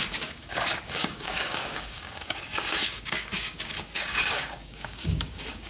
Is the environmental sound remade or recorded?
remade